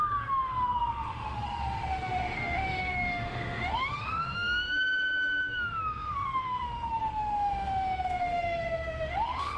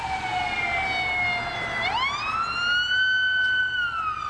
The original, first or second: second